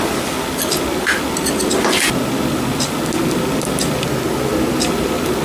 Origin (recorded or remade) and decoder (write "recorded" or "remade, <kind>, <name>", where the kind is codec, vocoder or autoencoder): recorded